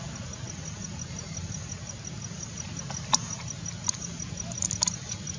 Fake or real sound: real